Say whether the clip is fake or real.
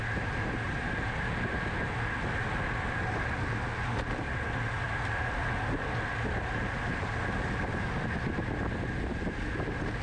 real